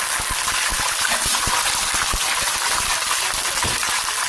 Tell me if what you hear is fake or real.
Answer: real